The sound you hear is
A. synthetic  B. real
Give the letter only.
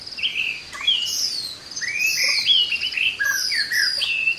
B